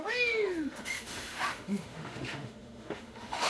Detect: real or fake fake